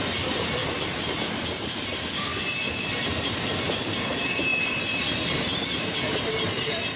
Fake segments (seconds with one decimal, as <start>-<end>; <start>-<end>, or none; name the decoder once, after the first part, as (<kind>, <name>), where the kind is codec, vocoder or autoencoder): 0.0-2.3 (vocoder, BigVGAN v2); 2.8-4.5; 5.0-7.0

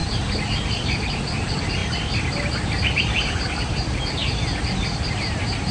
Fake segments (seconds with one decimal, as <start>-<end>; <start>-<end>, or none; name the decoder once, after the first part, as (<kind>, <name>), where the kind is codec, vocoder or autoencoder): 0.0-1.8 (vocoder, BigVGAN v2); 3.6-4.2; 4.8-5.7

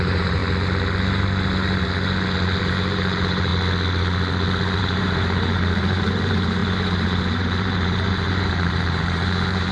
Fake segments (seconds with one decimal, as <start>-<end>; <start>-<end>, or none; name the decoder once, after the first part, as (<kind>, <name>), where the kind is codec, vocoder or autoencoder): 0.0-0.4 (vocoder, BigVGAN v2); 2.6-3.5; 4.8-9.7

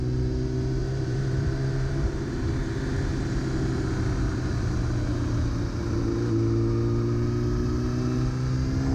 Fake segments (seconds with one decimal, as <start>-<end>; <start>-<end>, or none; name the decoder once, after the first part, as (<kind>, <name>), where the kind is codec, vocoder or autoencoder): 0.8-2.4 (vocoder, BigVGAN v2)